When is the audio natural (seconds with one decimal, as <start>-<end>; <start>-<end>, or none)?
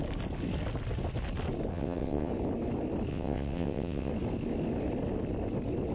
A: 0.0-1.7; 2.3-3.1; 4.1-5.9